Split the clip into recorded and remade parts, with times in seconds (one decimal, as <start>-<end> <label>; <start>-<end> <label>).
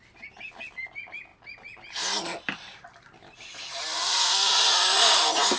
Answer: 0.0-5.6 recorded